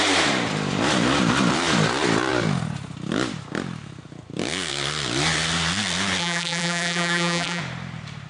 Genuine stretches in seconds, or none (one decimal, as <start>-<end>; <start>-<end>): 0.0-6.2; 7.6-8.3

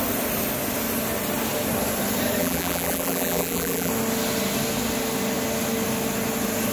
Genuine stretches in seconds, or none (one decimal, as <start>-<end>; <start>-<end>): 0.0-2.4; 3.9-6.7

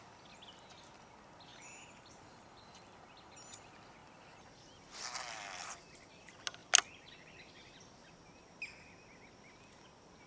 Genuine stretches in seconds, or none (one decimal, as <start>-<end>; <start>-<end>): 0.0-1.5; 2.8-4.0; 4.5-10.3

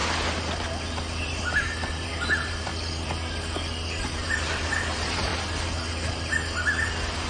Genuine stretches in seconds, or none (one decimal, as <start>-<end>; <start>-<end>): 0.0-1.2; 2.7-4.0; 5.3-7.3

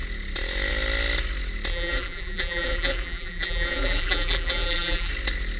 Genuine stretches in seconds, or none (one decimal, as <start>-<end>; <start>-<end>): 0.0-1.7; 5.1-5.6

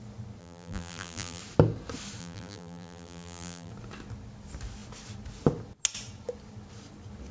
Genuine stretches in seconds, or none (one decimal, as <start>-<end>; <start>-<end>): 0.0-0.4; 1.4-2.2; 3.7-7.3